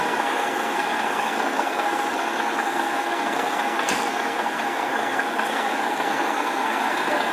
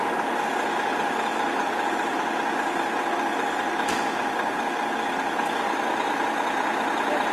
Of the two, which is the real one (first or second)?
second